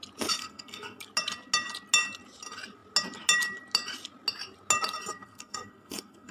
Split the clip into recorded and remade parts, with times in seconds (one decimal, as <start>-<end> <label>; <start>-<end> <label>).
0.0-0.4 recorded; 0.4-1.0 remade; 1.0-5.1 recorded; 5.1-6.3 remade